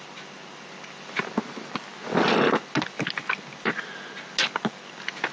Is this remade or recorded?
recorded